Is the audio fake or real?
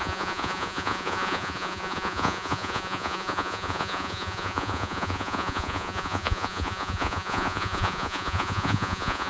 fake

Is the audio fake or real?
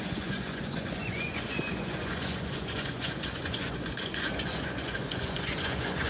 fake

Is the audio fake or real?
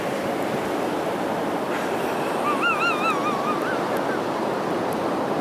real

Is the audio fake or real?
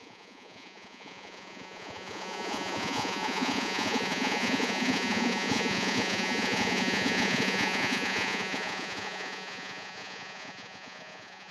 fake